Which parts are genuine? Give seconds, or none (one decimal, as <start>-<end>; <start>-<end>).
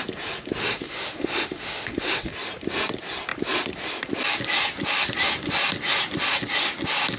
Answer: 0.0-0.6; 2.3-7.2